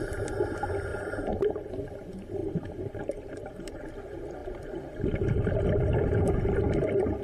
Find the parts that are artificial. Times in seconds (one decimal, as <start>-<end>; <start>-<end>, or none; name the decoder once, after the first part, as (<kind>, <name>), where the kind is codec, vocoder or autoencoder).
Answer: 0.9-1.7 (vocoder, BigVGAN v2); 2.4-3.8